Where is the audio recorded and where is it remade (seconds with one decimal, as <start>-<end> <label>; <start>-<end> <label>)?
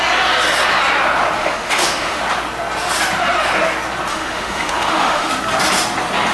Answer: 0.0-1.4 recorded; 1.4-2.2 remade; 2.2-4.1 recorded; 4.1-5.3 remade; 5.3-6.3 recorded